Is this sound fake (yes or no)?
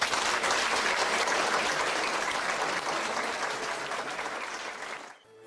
no